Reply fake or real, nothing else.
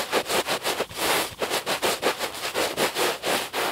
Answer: real